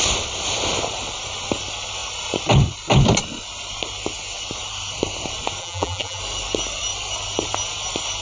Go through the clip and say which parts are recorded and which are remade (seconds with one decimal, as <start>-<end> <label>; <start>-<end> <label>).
0.0-5.6 recorded; 5.6-6.2 remade; 6.2-8.2 recorded

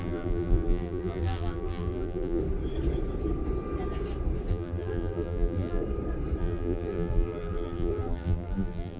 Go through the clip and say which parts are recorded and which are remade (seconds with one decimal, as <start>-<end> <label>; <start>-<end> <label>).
0.0-2.4 remade; 2.4-4.5 recorded; 4.5-5.8 remade; 5.8-6.4 recorded; 6.4-9.0 remade